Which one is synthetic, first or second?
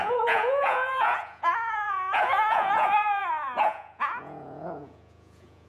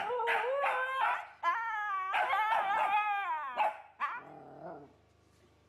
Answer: first